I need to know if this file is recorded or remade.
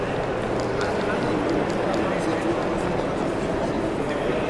recorded